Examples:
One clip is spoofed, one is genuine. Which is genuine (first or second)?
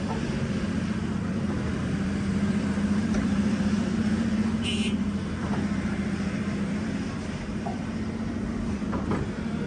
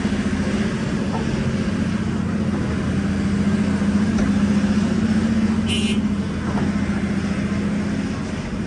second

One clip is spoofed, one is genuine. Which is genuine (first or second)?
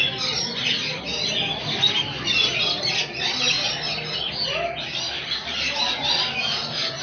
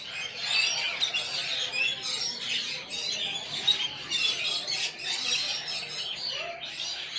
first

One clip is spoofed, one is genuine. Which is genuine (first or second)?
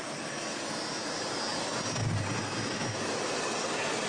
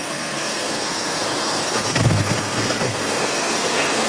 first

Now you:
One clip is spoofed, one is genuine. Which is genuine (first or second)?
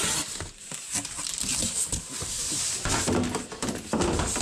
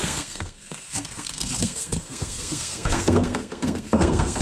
first